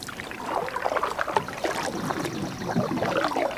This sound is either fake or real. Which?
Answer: real